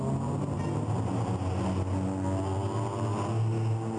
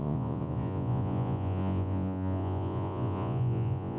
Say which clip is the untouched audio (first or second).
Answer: first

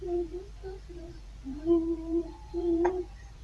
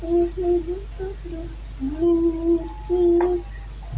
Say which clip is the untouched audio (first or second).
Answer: second